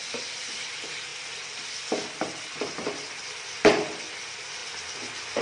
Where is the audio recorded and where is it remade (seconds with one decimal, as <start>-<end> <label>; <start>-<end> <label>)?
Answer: 0.0-5.4 recorded